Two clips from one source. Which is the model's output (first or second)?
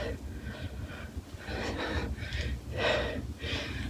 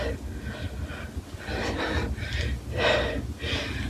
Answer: first